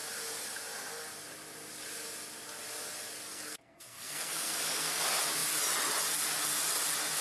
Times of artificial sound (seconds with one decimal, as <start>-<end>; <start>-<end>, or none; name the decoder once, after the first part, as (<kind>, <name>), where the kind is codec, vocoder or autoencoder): 3.3-5.0 (codec, SNAC)